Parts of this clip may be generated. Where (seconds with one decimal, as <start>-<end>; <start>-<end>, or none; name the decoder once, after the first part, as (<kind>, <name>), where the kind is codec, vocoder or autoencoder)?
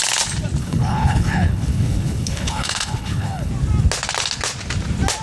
0.6-3.5 (codec, HILCodec)